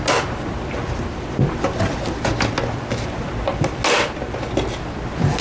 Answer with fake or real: real